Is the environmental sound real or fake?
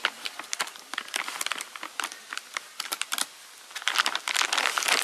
real